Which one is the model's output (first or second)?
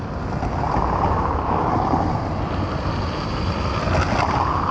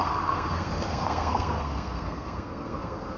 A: second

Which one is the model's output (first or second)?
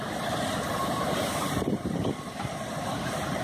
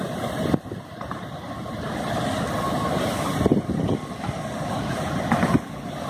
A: first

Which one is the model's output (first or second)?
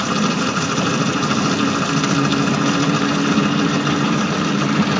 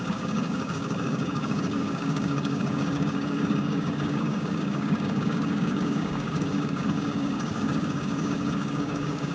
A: second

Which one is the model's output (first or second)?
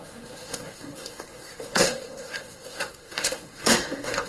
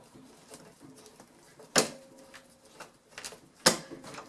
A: first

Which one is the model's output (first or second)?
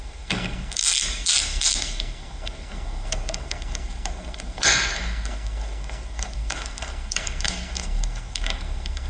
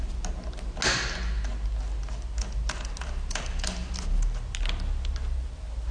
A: first